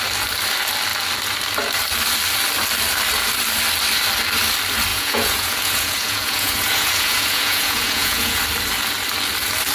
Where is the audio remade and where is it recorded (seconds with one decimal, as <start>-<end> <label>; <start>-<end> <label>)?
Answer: 0.0-4.9 recorded; 4.9-8.4 remade; 8.4-9.7 recorded